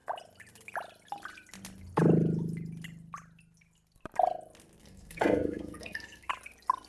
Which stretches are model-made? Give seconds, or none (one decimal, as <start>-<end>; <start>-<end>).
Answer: 4.8-6.3